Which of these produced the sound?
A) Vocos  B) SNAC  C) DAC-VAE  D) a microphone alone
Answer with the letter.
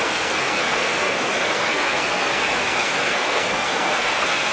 B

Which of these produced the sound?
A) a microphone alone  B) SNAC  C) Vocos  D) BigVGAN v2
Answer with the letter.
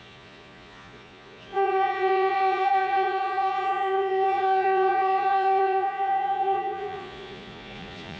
C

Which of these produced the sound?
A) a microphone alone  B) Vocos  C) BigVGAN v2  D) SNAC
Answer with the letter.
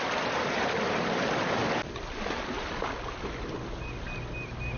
A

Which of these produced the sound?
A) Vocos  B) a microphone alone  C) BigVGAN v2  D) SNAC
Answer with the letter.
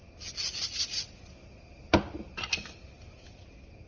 B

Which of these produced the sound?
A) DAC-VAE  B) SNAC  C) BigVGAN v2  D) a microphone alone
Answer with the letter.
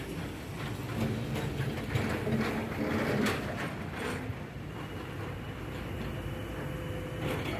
D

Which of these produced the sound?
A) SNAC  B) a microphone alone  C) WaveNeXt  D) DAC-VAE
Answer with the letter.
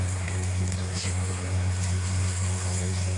A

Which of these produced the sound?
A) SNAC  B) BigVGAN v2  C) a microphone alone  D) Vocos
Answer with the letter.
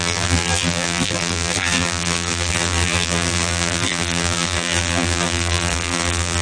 B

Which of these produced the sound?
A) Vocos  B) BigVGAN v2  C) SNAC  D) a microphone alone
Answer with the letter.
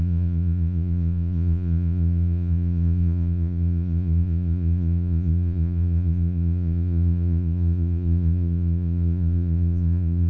A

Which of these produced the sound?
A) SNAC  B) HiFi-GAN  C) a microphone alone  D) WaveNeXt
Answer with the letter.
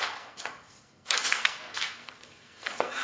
A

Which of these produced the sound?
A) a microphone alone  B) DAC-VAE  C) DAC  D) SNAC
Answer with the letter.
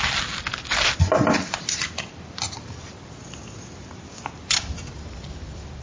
A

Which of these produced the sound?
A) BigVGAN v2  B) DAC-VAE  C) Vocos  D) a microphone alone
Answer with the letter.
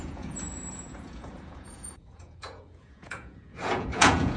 C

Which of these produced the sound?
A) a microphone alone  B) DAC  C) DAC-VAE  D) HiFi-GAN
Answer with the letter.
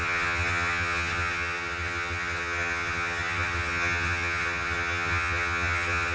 D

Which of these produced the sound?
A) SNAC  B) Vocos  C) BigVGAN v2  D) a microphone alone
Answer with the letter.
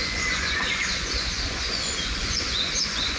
B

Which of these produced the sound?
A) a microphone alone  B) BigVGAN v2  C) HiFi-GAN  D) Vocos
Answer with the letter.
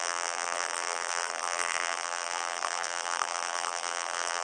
B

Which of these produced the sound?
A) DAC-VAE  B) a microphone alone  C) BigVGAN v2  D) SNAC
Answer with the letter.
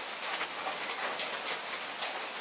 B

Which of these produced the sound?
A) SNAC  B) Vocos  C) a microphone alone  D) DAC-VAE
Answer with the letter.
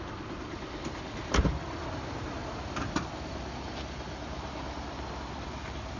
C